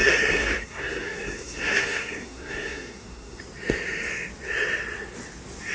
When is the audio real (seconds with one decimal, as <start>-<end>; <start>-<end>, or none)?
3.4-5.7